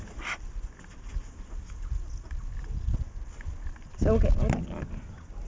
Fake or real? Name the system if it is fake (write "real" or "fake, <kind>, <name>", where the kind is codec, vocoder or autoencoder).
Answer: real